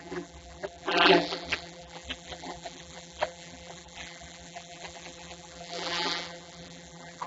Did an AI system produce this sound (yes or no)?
yes